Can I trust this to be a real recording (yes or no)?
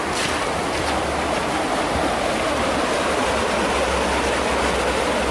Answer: yes